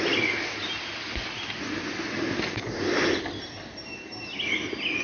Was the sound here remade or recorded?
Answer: recorded